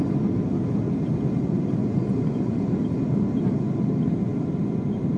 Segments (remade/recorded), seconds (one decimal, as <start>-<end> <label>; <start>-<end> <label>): 0.0-1.8 recorded; 1.8-2.7 remade; 2.7-5.2 recorded